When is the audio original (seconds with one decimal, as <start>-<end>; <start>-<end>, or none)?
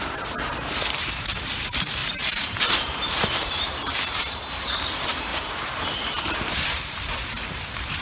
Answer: none